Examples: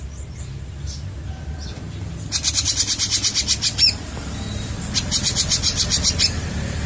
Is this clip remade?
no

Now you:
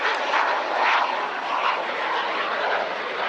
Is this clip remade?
no